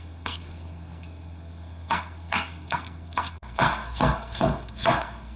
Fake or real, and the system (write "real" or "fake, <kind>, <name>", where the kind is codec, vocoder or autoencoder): fake, codec, SNAC